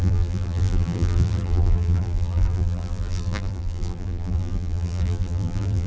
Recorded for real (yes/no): no